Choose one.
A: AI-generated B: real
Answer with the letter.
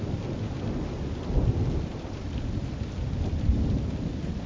B